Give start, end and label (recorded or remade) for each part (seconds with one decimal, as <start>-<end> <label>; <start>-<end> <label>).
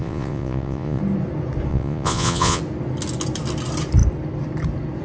0.0-1.0 remade; 1.0-1.7 recorded; 1.7-2.6 remade; 2.6-5.0 recorded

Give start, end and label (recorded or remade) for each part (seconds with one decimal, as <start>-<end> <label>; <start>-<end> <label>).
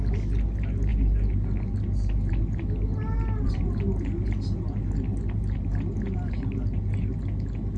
0.0-7.8 recorded